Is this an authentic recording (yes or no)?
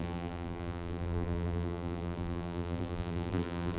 no